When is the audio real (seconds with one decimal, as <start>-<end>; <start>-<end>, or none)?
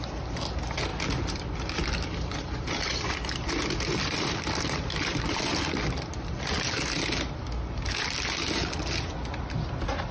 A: 0.0-0.9; 5.4-10.1